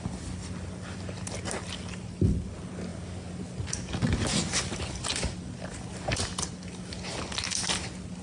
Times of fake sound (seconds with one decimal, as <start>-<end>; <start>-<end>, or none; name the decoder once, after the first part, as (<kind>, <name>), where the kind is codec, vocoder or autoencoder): none